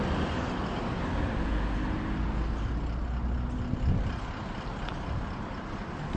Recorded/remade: recorded